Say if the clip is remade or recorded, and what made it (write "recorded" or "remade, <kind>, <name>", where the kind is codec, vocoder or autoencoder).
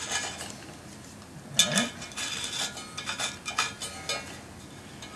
recorded